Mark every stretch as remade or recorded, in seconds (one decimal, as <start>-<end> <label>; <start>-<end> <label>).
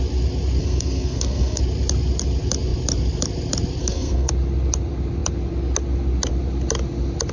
0.0-0.6 recorded; 0.6-1.6 remade; 1.6-3.8 recorded; 3.8-4.3 remade; 4.3-7.3 recorded